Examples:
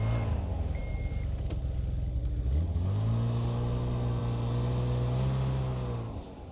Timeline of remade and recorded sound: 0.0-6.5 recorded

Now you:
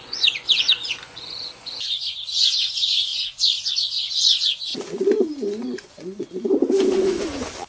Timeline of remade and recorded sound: 0.0-3.1 remade; 3.1-4.1 recorded; 4.1-7.7 remade